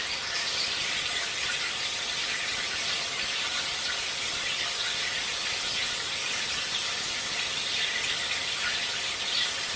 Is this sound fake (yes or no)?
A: no